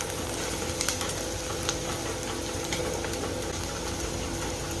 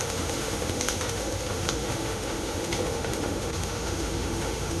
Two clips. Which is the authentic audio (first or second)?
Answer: first